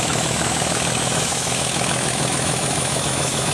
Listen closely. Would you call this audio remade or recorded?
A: remade